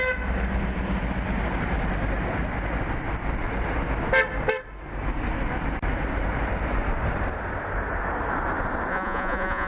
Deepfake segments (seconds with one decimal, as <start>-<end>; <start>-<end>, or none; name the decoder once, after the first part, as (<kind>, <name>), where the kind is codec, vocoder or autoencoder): 8.9-9.7 (vocoder, Vocos)